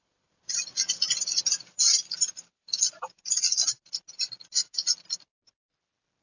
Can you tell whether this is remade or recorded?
recorded